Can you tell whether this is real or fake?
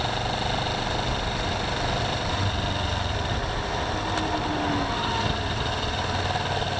real